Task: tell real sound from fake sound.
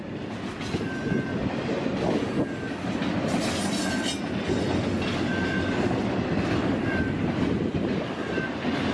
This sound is real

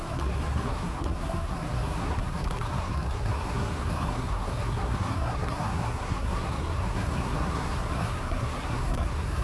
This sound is fake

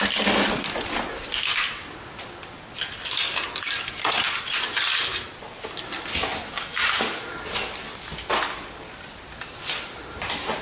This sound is real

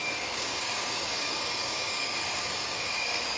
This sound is fake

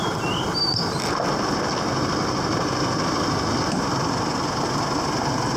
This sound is real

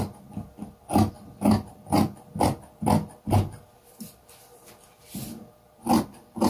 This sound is real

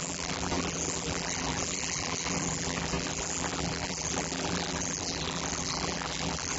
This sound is fake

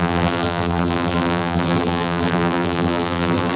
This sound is fake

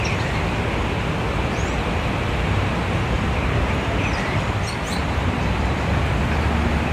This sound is real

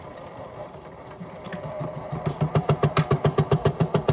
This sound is fake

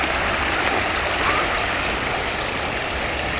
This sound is real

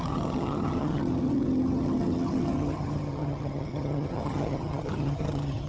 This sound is fake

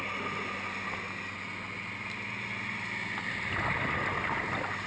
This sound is real